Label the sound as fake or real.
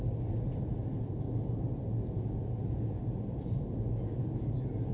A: real